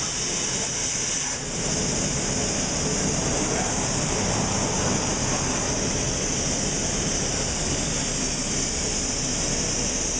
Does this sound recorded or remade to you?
recorded